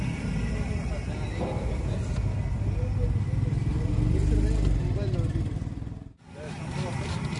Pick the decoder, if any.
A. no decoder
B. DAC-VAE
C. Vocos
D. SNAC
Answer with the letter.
A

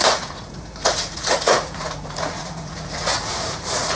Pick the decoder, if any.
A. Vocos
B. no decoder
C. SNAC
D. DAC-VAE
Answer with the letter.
A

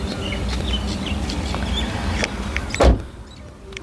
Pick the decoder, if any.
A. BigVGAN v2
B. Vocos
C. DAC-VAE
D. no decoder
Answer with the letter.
D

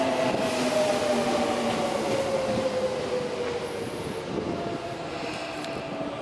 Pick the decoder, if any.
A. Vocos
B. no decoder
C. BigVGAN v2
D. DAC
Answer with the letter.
B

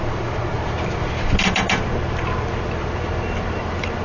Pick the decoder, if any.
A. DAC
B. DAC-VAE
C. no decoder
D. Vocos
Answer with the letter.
C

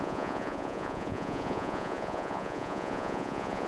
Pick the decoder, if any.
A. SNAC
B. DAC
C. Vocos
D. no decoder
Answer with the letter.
C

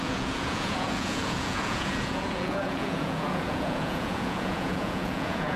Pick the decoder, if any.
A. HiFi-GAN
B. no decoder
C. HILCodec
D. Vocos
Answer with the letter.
D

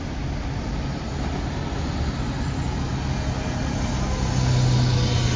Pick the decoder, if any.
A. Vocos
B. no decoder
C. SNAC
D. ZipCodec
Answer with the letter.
B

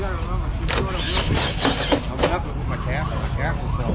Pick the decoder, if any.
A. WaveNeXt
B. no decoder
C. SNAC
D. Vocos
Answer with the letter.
B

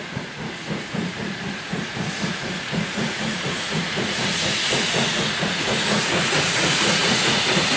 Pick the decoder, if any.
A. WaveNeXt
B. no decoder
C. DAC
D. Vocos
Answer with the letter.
D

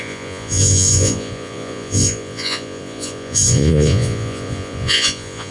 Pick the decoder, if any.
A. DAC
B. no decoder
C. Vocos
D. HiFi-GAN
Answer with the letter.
C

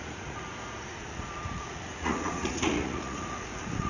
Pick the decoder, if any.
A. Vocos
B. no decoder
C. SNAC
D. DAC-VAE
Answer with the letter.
A